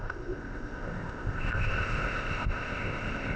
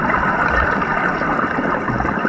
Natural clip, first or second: second